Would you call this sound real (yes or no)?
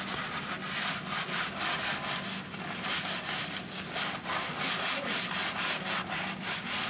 yes